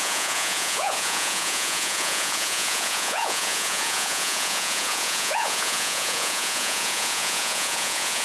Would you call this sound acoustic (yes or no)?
no